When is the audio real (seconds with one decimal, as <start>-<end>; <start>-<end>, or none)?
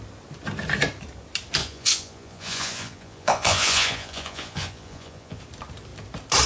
0.0-1.6; 5.4-6.5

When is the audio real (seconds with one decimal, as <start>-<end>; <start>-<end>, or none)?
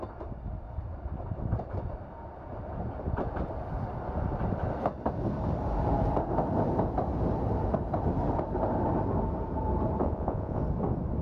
0.0-10.0; 10.6-11.2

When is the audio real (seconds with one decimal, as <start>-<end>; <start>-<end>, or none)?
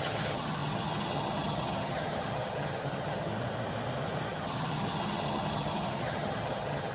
3.3-4.3